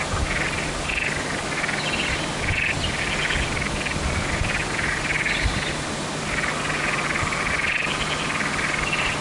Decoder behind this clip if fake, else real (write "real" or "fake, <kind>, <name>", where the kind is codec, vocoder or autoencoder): real